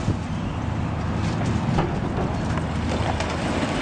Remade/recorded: recorded